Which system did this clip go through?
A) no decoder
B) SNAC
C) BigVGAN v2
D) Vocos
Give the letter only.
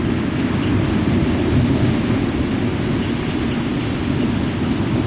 A